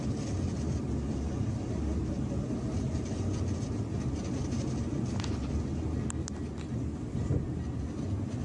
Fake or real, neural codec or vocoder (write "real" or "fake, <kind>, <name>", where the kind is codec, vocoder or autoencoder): real